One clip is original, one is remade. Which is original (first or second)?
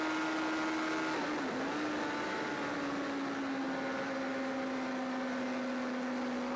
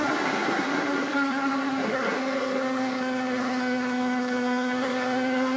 first